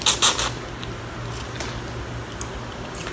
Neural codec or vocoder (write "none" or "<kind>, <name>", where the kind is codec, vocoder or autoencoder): none